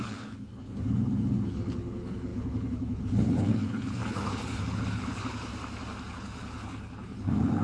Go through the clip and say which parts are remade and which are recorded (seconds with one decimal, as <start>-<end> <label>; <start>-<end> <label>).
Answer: 0.0-5.5 remade; 5.5-6.1 recorded; 6.1-7.6 remade

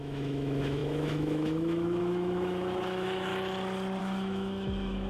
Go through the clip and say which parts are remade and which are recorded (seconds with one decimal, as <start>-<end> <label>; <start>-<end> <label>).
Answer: 0.0-3.3 remade; 3.3-4.0 recorded; 4.0-5.1 remade

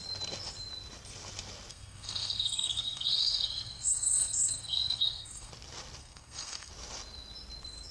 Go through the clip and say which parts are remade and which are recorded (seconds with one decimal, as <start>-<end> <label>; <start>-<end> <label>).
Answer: 0.0-1.7 recorded; 1.7-5.5 remade; 5.5-6.0 recorded; 6.0-6.7 remade; 6.7-7.9 recorded

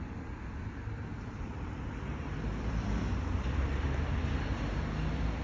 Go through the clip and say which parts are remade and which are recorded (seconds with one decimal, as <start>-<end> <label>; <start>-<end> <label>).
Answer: 0.0-1.1 recorded; 1.1-4.3 remade; 4.3-5.4 recorded

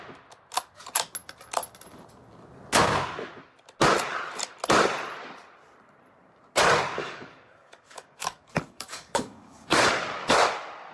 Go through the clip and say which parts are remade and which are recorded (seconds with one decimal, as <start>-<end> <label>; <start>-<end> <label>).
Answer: 0.0-7.0 recorded; 7.0-9.7 remade; 9.7-10.9 recorded

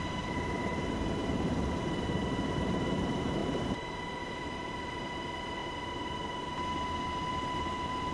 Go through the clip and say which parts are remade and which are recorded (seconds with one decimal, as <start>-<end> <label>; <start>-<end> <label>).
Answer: 0.0-0.7 remade; 0.7-1.3 recorded; 1.3-5.6 remade; 5.6-7.3 recorded; 7.3-8.1 remade

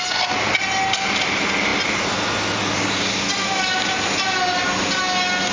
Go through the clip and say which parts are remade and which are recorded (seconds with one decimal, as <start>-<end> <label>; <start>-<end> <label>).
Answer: 0.0-5.5 recorded

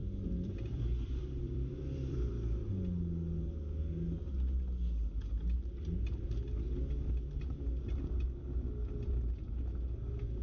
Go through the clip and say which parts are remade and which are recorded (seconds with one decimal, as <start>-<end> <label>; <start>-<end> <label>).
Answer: 0.0-2.7 remade; 2.7-10.4 recorded